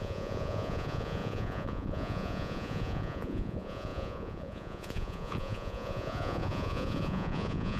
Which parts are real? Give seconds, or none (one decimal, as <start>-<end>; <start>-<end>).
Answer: none